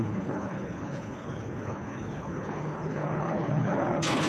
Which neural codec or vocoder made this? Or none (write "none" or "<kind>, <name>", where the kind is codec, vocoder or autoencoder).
codec, HILCodec